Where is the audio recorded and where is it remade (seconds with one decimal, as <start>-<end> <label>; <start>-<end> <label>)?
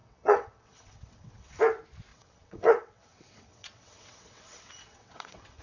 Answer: 0.0-1.6 remade; 1.6-2.1 recorded; 2.1-5.6 remade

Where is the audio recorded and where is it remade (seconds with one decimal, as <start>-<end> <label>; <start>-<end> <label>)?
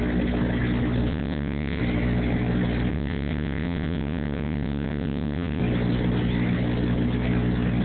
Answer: 0.0-1.1 recorded; 1.1-1.8 remade; 1.8-2.9 recorded; 2.9-5.6 remade; 5.6-7.8 recorded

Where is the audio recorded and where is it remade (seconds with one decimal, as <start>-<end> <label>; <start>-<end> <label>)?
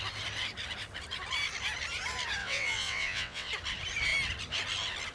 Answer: 0.0-2.4 recorded; 2.4-3.5 remade; 3.5-5.1 recorded